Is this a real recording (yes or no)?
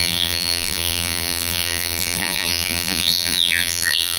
no